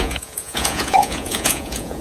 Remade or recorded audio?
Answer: remade